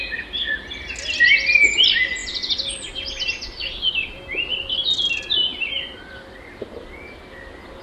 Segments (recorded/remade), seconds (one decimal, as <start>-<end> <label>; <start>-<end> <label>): 0.0-5.5 recorded; 5.5-6.1 remade; 6.1-7.8 recorded